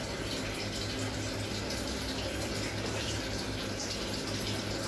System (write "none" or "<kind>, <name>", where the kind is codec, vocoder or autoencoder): none